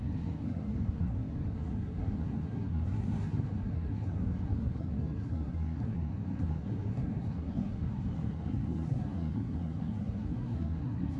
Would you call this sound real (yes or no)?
no